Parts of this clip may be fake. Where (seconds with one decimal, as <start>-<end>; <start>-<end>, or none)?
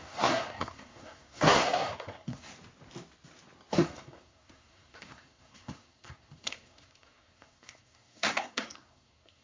0.0-2.5; 3.7-9.4